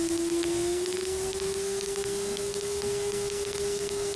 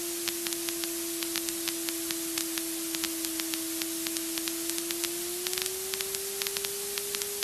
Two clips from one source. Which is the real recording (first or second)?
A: second